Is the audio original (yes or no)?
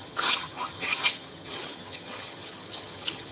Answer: no